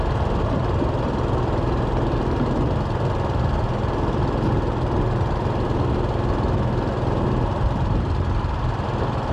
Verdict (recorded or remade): recorded